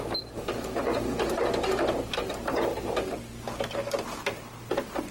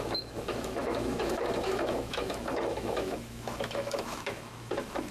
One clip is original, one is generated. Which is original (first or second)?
first